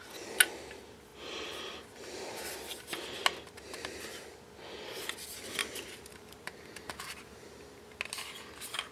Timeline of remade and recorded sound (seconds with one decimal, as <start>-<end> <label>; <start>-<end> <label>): 0.0-5.6 recorded; 5.6-8.0 remade; 8.0-8.9 recorded